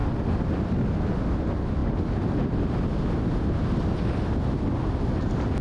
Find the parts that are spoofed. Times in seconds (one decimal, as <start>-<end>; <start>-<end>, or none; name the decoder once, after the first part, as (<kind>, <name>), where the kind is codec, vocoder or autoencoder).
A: none